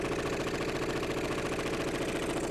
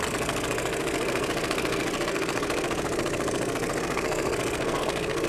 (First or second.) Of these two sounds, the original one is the first